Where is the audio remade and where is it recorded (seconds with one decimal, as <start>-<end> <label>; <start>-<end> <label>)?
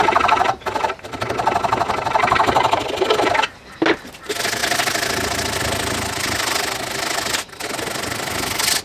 0.0-8.8 recorded